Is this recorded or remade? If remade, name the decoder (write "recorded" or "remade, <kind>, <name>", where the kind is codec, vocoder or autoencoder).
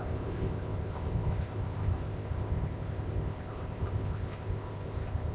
remade, codec, ZipCodec